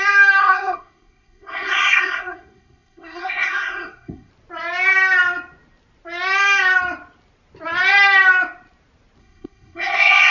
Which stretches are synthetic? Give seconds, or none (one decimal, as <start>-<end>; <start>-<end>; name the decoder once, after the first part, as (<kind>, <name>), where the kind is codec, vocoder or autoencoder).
0.4-4.3 (codec, SNAC); 9.2-10.3